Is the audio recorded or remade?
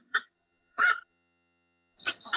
remade